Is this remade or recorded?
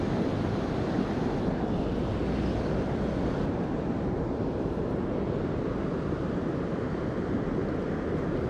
recorded